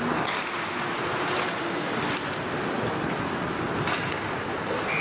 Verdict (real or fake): real